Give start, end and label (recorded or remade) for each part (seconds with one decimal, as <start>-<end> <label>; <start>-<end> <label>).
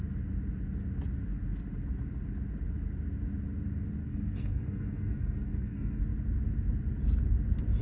0.0-4.0 recorded; 4.0-6.0 remade; 6.0-7.8 recorded